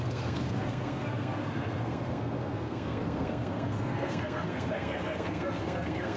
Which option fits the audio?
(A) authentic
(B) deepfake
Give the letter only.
B